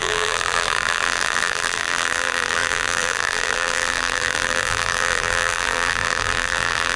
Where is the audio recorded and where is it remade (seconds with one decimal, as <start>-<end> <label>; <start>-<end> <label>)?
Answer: 0.0-7.0 remade